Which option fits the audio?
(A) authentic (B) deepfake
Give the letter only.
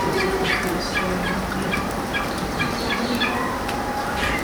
B